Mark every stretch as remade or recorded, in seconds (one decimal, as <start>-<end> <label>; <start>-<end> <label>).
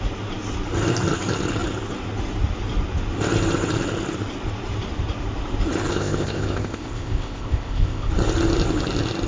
0.0-5.9 recorded; 5.9-8.1 remade; 8.1-9.3 recorded